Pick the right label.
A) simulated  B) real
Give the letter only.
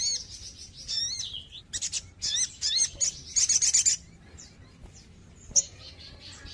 B